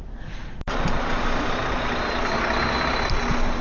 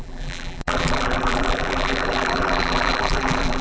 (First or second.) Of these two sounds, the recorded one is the first